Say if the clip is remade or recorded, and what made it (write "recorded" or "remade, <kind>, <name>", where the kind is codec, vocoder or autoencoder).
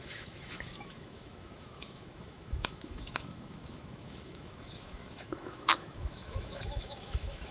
remade, autoencoder, DAC-VAE